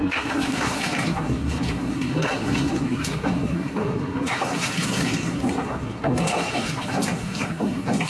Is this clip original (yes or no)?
no